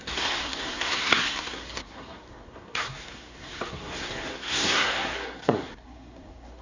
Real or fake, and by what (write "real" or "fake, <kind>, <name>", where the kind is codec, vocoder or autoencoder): fake, codec, SNAC